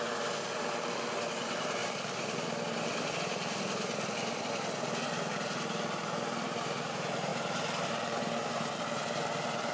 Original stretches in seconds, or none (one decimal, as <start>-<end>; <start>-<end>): 0.0-9.7